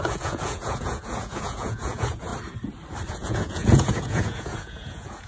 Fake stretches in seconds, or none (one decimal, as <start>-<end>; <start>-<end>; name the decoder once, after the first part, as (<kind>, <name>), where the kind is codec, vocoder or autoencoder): 0.0-2.3 (vocoder, Vocos); 3.1-5.3